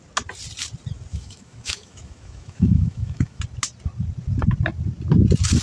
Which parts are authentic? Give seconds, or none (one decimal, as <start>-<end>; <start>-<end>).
0.0-1.1; 3.4-5.6